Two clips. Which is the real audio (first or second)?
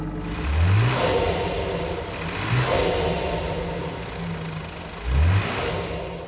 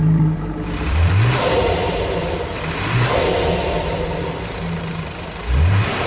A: first